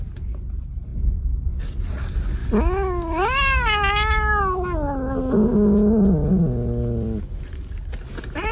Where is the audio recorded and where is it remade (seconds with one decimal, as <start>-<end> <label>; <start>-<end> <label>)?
0.0-8.5 recorded